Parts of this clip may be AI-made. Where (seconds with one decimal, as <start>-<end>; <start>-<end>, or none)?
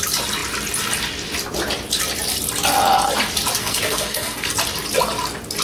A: 3.6-4.5